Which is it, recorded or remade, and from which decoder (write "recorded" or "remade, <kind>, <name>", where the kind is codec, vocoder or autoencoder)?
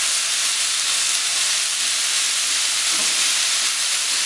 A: recorded